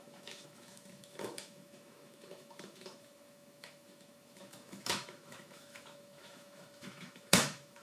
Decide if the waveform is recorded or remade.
remade